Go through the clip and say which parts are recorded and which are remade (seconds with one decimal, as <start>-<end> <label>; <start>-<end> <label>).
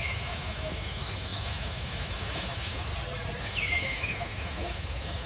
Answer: 0.0-2.9 remade; 2.9-3.4 recorded; 3.4-5.3 remade